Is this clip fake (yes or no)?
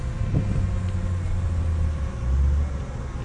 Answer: no